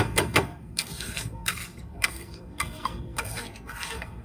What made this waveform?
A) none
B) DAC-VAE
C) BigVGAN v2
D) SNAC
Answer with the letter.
D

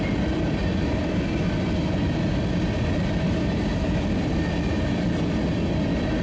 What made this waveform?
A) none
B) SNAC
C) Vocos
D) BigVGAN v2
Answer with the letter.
A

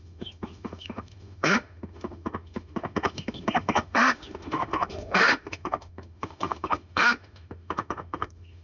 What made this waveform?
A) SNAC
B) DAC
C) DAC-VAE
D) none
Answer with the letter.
C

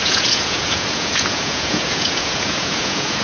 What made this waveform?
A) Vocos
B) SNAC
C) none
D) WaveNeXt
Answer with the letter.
A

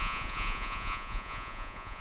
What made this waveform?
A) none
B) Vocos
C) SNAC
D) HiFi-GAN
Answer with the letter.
B